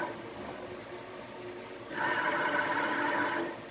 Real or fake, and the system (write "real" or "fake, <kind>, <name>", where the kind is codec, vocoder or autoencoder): fake, vocoder, BigVGAN v2